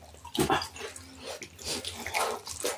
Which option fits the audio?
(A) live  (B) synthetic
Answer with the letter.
A